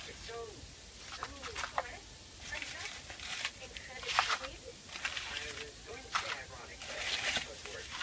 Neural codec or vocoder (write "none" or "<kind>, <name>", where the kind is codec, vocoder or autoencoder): none